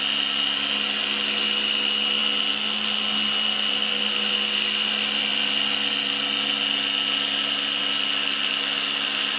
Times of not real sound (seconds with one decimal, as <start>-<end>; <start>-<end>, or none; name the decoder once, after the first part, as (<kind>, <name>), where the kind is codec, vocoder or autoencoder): none